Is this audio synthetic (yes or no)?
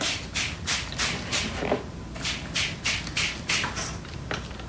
no